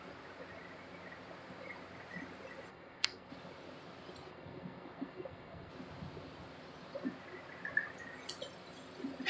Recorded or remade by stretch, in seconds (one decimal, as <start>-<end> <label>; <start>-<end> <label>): 0.0-2.7 recorded; 2.7-3.3 remade; 3.3-4.3 recorded; 4.3-5.7 remade; 5.7-9.3 recorded